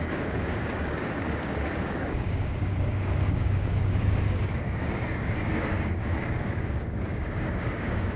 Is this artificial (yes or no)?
yes